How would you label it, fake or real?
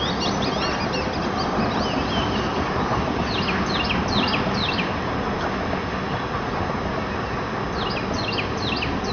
real